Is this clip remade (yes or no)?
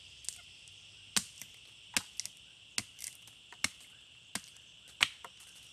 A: no